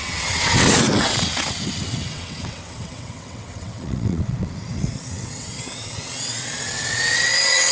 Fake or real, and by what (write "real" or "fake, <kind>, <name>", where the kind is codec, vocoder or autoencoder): fake, vocoder, WaveNeXt